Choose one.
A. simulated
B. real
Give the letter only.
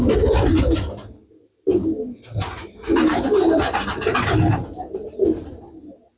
B